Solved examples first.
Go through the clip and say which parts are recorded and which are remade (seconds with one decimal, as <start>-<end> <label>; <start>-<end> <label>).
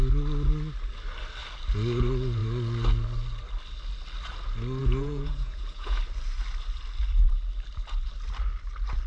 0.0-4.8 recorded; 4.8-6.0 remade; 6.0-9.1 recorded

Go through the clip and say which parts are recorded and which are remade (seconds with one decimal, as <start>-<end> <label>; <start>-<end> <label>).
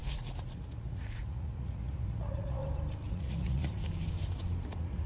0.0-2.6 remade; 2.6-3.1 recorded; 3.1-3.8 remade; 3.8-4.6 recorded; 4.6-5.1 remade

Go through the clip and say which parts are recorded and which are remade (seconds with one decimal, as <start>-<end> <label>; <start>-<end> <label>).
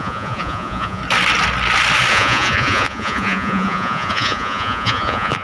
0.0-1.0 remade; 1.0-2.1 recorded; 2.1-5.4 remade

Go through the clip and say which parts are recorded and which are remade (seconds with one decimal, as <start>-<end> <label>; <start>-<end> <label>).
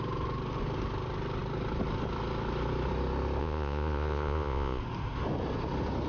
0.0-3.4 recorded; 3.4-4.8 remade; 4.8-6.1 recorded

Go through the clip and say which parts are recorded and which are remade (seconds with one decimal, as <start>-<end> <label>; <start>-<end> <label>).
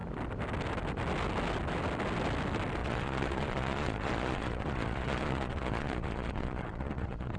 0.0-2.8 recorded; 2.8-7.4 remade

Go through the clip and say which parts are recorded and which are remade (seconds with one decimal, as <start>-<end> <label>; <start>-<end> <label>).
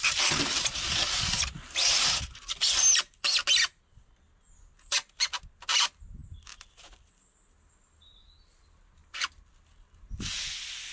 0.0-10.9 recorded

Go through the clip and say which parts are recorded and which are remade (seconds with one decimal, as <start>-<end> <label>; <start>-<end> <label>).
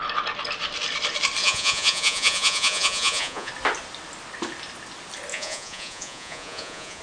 0.0-1.4 recorded; 1.4-3.5 remade; 3.5-5.3 recorded; 5.3-7.0 remade